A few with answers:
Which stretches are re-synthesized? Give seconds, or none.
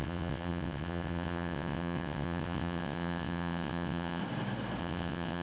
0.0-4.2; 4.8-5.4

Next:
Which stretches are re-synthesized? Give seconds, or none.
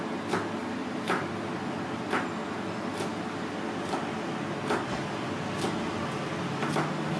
none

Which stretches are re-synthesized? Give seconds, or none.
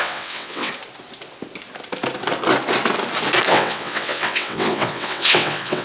0.0-0.7; 3.5-5.8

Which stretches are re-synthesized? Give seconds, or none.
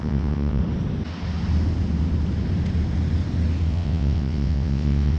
0.0-0.6; 3.7-5.2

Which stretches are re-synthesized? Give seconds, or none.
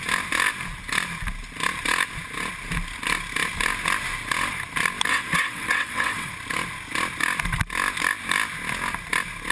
5.1-6.3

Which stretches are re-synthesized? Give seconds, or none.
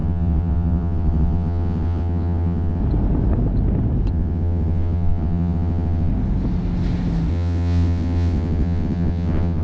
0.0-2.8; 4.1-6.1; 7.3-9.6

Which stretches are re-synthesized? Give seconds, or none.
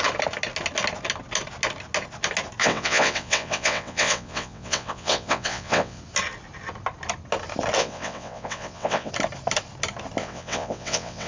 2.6-6.0; 7.8-9.1; 10.2-11.3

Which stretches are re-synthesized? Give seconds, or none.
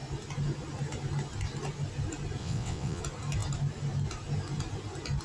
2.4-3.0